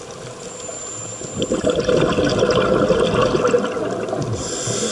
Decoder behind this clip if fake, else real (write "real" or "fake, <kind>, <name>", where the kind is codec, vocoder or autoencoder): real